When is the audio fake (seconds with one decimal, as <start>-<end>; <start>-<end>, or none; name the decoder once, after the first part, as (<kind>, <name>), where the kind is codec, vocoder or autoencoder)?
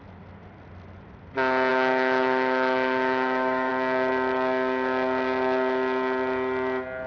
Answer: 1.7-3.7 (autoencoder, DAC-VAE)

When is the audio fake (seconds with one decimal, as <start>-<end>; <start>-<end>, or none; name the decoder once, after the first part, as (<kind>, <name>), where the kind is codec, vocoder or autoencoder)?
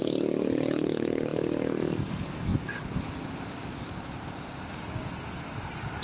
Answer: none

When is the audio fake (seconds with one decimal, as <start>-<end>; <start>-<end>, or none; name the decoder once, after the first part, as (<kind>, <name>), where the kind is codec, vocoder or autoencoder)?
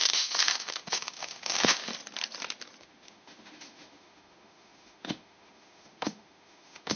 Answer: 0.0-1.9 (autoencoder, DAC-VAE); 2.8-7.0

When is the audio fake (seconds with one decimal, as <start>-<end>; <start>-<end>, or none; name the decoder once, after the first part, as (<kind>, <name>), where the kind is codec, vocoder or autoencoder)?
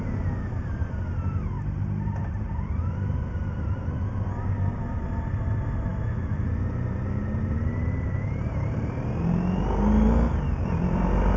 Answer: 5.9-6.5 (autoencoder, DAC-VAE)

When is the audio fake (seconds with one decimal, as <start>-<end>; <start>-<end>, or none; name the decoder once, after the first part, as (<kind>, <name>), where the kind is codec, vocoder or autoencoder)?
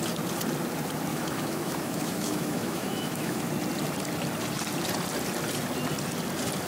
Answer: 1.1-3.5 (autoencoder, DAC-VAE)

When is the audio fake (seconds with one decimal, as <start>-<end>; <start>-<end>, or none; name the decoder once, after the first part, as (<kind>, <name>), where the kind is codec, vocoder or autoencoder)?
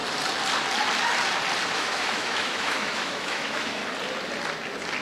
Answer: 1.7-3.8 (autoencoder, DAC-VAE)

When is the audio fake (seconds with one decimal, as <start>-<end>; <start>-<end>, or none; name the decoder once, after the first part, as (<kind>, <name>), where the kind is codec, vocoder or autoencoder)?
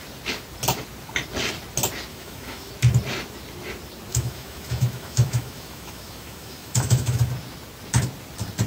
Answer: 2.1-2.7 (autoencoder, DAC-VAE); 4.1-7.3